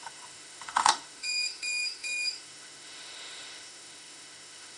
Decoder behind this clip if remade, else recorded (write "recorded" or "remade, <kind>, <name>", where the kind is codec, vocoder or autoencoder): remade, autoencoder, DAC-VAE